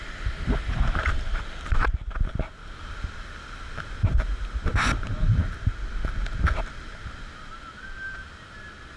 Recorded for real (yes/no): yes